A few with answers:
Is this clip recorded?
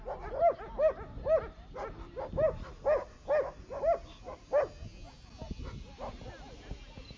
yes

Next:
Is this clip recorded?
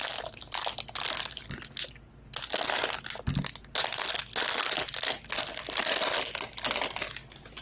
yes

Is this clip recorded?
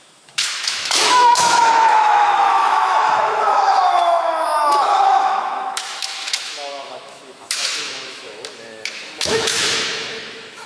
no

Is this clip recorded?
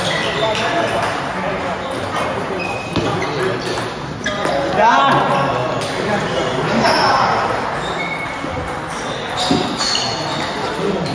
yes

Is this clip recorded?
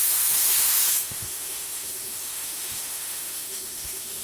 no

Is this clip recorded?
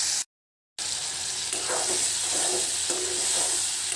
yes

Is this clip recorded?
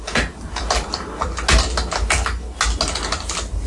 yes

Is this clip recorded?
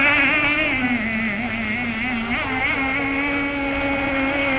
yes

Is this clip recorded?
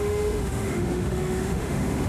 no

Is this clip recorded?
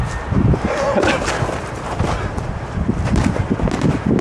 yes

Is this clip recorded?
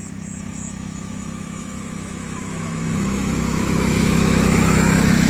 no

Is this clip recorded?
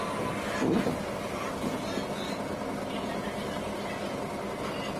yes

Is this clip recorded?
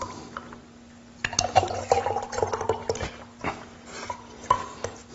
yes